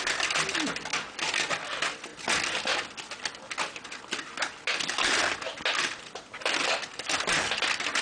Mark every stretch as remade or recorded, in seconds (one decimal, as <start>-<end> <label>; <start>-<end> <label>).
0.0-8.0 recorded